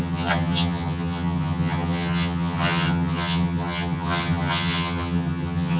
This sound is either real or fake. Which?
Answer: fake